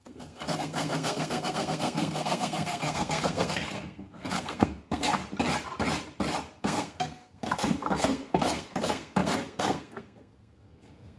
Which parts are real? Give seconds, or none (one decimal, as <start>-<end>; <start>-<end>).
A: 5.2-6.6

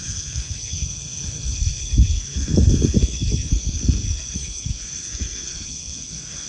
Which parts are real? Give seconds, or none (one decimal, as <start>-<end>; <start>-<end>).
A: none

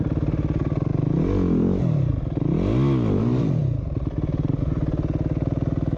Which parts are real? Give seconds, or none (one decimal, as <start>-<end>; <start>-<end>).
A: 0.0-6.0